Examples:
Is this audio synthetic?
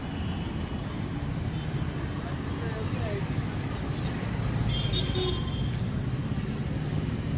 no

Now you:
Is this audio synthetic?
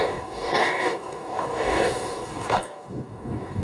yes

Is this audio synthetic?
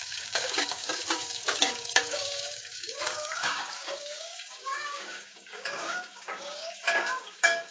yes